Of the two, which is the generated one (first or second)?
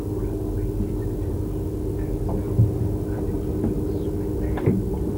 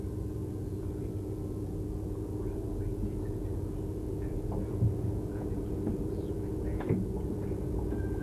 second